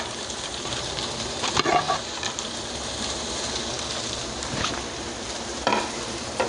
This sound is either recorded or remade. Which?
remade